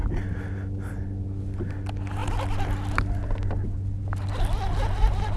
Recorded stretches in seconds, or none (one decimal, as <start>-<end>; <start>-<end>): 0.0-5.4